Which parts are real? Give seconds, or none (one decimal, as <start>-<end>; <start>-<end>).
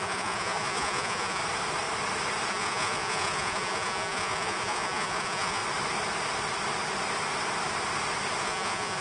1.4-2.5; 5.6-8.4